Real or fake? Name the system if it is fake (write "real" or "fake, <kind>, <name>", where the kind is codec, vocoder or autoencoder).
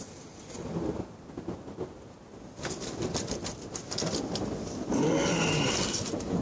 real